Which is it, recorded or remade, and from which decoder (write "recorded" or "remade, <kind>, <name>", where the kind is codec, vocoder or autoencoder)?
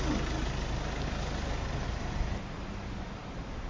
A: recorded